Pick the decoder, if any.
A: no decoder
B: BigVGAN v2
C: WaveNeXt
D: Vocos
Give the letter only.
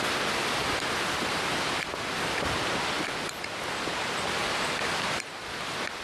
A